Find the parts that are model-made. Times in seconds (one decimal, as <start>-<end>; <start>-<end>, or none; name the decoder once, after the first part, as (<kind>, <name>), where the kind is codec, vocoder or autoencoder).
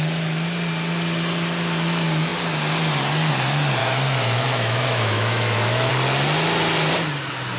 3.8-5.9 (autoencoder, DAC-VAE)